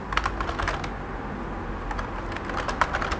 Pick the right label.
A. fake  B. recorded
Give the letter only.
B